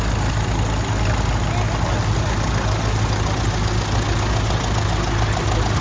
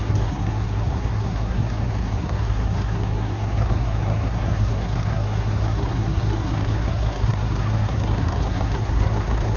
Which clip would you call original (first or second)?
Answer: first